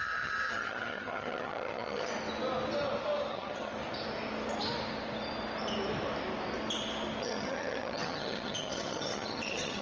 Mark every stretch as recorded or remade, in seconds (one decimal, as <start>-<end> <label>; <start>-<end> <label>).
0.0-2.1 remade; 2.1-3.3 recorded; 3.3-3.7 remade; 3.7-7.2 recorded; 7.2-9.8 remade